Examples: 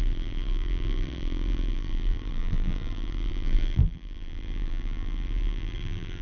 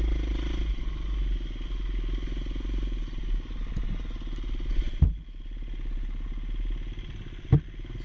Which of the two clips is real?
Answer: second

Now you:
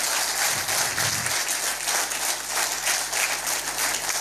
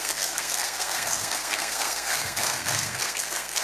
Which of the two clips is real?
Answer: first